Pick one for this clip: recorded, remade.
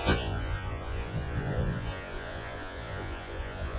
remade